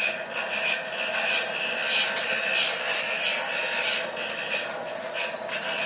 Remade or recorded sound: recorded